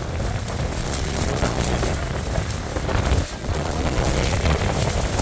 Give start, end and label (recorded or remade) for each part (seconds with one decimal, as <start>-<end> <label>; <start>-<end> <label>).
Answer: 0.0-0.8 recorded; 0.8-1.8 remade; 1.8-3.4 recorded; 3.4-4.6 remade; 4.6-5.2 recorded